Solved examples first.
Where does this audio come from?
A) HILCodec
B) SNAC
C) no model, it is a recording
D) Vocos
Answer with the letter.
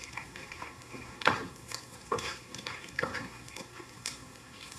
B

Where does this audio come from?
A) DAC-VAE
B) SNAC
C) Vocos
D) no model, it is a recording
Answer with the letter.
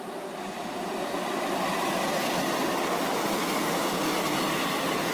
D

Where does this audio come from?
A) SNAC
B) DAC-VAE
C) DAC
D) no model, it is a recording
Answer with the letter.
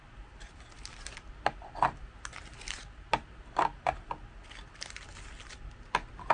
D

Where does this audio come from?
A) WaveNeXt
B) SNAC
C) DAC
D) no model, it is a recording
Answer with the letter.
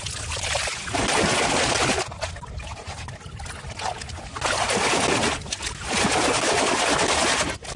D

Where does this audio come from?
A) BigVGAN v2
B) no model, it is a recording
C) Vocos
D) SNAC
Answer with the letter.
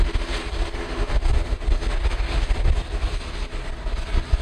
B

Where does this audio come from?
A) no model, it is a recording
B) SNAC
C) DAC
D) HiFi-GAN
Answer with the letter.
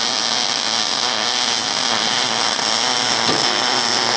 A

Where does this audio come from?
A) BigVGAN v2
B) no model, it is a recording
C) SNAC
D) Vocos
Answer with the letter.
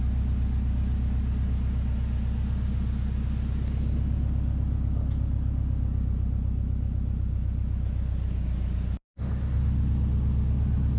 B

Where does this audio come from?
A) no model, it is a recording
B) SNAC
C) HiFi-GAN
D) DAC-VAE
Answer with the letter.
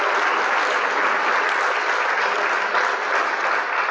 A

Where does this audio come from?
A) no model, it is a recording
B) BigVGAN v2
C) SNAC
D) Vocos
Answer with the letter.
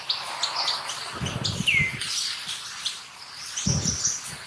A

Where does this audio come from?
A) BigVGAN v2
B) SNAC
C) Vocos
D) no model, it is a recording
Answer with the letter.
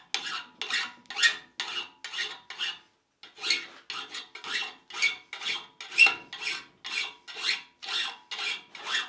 D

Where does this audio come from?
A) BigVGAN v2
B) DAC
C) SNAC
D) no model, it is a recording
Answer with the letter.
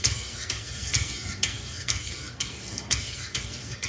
C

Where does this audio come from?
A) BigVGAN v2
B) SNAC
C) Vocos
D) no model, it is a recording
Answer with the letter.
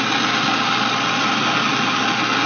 D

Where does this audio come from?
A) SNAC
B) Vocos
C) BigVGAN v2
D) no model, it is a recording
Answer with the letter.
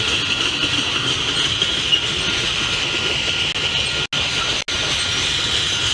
D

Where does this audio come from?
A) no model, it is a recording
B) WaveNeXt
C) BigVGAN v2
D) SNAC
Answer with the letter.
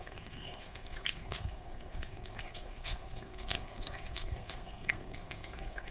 D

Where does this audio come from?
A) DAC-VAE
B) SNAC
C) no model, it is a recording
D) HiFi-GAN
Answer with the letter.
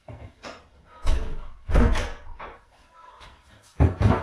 B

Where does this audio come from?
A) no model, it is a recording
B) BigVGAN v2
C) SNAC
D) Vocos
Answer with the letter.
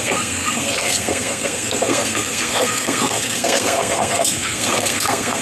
C